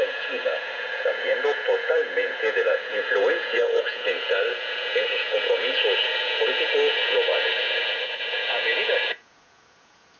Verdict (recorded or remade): remade